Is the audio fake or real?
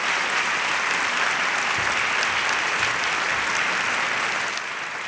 real